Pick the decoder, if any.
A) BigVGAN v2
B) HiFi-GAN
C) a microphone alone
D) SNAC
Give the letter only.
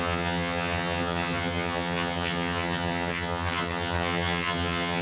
B